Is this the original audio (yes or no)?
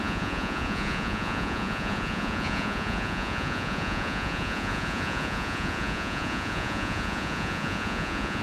no